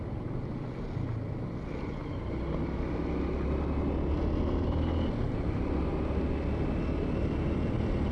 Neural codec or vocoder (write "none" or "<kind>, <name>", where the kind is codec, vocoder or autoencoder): none